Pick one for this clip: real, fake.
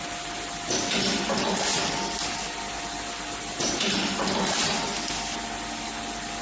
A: real